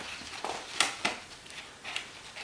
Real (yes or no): yes